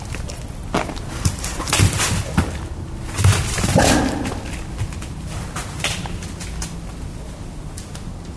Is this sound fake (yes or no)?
no